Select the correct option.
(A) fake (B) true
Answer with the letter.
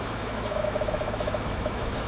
A